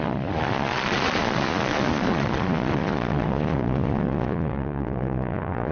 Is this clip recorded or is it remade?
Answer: remade